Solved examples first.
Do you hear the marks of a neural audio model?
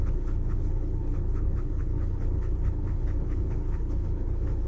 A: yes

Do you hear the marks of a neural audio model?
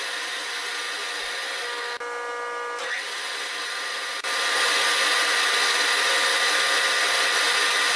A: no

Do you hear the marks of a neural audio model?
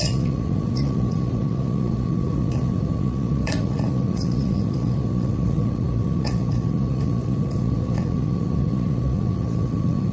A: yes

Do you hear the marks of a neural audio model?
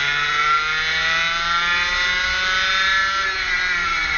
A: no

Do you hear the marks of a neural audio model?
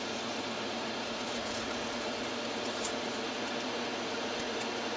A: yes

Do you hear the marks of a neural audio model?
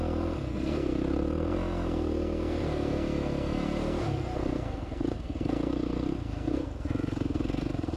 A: yes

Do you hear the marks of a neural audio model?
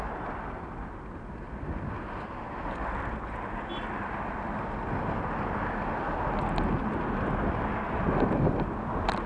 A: no